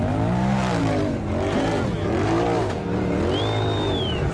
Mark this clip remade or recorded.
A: recorded